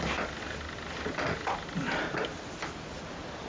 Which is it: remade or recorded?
recorded